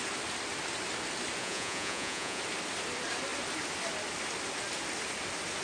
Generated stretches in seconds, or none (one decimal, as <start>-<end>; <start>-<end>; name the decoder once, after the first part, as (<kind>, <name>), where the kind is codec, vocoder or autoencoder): 1.4-2.4 (vocoder, Vocos)